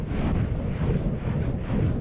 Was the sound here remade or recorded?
recorded